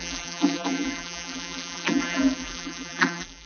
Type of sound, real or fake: fake